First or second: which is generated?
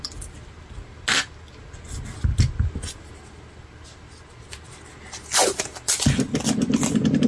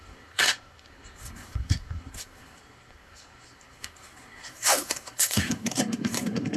second